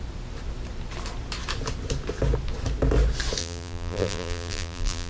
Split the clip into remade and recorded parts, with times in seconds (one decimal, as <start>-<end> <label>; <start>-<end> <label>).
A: 0.0-3.4 recorded; 3.4-5.1 remade